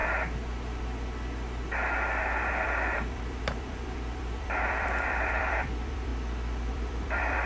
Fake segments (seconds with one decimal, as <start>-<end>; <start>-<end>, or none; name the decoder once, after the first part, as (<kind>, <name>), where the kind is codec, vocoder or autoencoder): 2.5-6.1 (vocoder, BigVGAN v2); 6.7-7.5

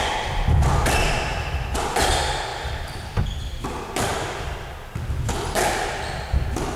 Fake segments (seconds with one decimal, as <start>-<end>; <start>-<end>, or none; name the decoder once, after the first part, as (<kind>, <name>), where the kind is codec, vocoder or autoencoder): 1.3-2.1 (vocoder, BigVGAN v2); 2.5-3.5; 4.1-4.9

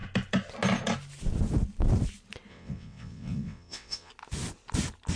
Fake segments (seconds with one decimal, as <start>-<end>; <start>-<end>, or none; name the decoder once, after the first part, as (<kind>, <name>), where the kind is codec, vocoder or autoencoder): 2.5-4.1 (vocoder, WaveNeXt)

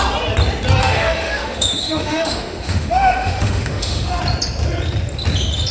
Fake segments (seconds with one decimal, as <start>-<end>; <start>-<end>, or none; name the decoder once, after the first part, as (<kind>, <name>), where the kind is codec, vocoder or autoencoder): 0.8-4.2 (autoencoder, DAC-VAE)